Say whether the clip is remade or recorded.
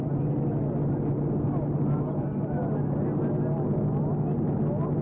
recorded